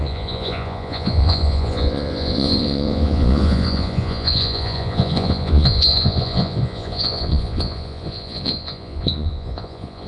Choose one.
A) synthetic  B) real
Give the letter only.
A